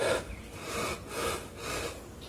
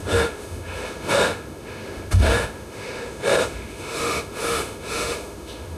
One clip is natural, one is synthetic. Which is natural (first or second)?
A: first